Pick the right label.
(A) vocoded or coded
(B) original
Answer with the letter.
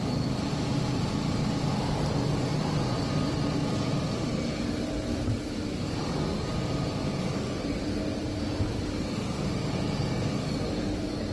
B